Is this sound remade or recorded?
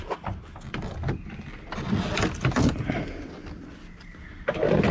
recorded